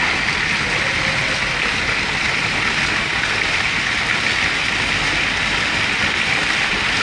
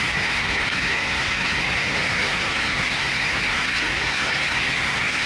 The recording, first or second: first